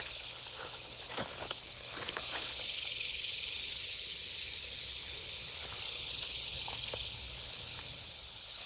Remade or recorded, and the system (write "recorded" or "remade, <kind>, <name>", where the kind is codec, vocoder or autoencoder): remade, codec, HILCodec